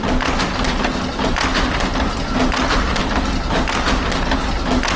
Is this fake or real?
real